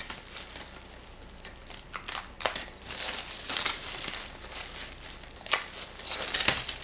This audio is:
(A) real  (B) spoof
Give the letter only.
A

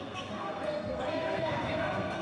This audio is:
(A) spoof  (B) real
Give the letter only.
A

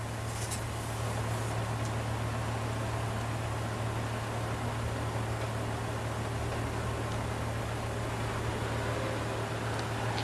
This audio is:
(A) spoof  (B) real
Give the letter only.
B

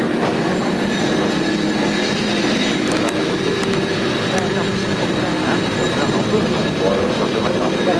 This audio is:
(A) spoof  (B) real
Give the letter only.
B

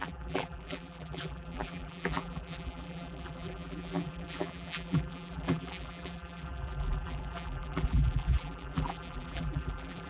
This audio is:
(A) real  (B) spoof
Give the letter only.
B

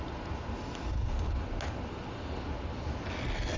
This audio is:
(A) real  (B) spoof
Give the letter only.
A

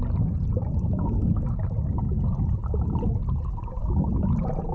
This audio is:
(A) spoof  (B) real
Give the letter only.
B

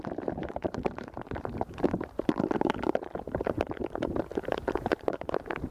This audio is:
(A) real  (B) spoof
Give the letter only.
B